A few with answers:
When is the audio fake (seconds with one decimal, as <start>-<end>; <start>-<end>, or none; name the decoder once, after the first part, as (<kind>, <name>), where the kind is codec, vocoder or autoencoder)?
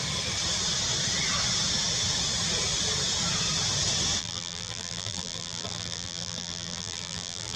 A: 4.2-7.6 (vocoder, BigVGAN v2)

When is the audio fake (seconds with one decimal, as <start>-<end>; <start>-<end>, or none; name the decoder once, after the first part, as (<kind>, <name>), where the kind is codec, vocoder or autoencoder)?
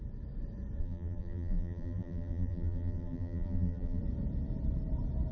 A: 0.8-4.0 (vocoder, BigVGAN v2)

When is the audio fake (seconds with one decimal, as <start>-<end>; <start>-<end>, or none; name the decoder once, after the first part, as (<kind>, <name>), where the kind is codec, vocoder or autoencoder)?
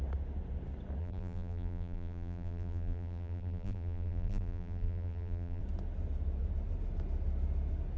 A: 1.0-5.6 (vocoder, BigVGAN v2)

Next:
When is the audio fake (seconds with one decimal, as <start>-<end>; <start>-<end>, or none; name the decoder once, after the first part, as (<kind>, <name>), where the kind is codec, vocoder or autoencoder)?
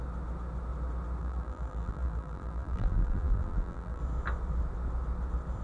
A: 1.2-4.0 (vocoder, BigVGAN v2)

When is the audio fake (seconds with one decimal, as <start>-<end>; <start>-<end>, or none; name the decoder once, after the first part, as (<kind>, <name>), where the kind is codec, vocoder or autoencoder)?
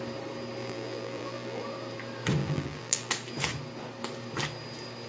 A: 0.6-1.6 (vocoder, BigVGAN v2); 2.4-3.1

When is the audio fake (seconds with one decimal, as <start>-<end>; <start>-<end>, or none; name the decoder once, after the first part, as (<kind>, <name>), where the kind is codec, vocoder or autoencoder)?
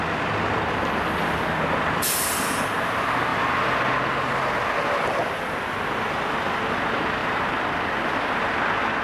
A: 7.2-8.4 (vocoder, BigVGAN v2)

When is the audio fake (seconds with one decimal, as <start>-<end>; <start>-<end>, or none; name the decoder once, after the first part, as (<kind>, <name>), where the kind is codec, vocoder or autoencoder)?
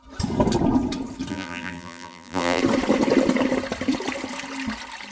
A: 1.3-2.6 (vocoder, BigVGAN v2)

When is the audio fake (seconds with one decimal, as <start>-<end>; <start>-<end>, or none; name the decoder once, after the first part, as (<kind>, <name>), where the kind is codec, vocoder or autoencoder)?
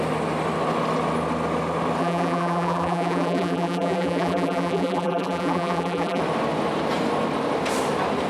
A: 2.0-6.2 (vocoder, BigVGAN v2)